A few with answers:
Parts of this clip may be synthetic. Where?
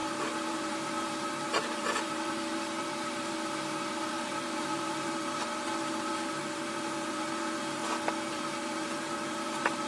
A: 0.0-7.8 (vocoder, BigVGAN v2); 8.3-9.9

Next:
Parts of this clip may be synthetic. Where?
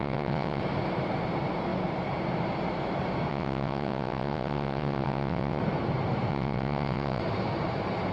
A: 0.0-0.6 (vocoder, WaveNeXt); 3.3-5.6; 6.3-7.2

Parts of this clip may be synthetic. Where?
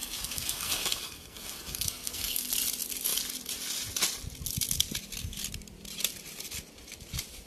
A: 0.0-2.5 (codec, SNAC)